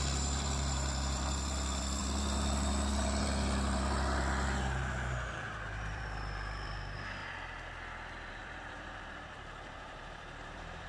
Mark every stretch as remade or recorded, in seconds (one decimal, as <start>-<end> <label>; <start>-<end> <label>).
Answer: 0.0-7.2 remade; 7.2-8.3 recorded; 8.3-10.9 remade